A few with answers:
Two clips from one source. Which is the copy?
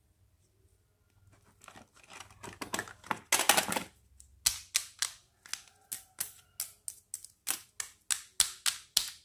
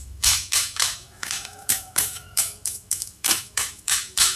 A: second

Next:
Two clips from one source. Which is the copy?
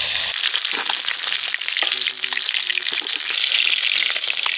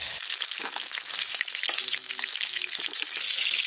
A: second